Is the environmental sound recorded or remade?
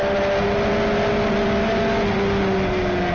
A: recorded